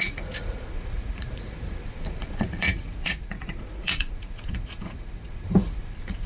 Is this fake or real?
fake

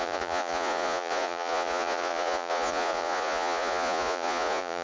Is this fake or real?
fake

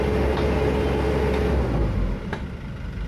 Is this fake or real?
real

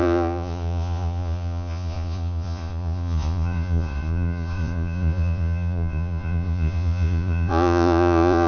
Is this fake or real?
fake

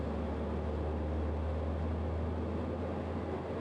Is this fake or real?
real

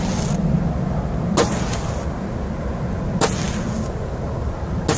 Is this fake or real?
real